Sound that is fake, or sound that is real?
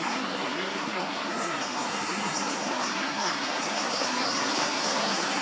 fake